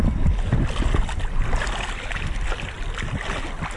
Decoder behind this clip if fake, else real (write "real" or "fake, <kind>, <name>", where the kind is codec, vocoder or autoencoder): real